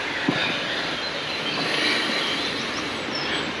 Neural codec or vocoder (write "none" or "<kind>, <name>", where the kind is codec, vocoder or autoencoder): none